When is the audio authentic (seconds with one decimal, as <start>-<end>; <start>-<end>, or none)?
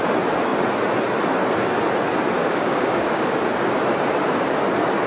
0.0-2.4; 3.4-5.1